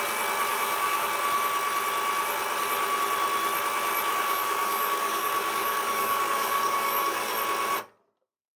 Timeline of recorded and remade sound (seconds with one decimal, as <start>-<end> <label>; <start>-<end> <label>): 0.0-0.5 recorded; 0.5-1.1 remade; 1.1-4.1 recorded; 4.1-7.3 remade; 7.3-8.6 recorded